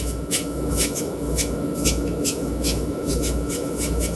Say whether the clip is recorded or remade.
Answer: remade